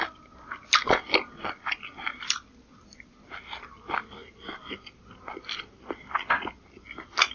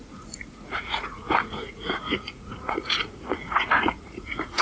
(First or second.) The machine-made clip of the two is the second